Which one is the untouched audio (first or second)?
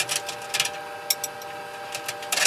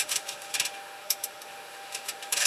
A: first